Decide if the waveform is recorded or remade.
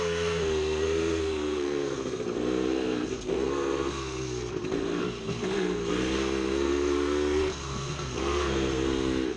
remade